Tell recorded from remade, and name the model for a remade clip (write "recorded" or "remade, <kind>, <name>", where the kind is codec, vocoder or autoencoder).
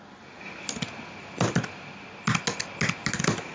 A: recorded